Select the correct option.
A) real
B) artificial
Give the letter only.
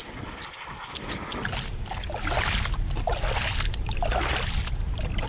A